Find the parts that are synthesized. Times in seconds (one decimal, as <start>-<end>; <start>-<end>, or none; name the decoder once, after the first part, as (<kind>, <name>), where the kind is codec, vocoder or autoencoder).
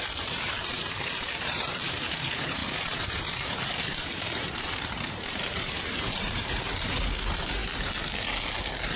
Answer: 0.0-2.6 (vocoder, BigVGAN v2); 3.6-9.0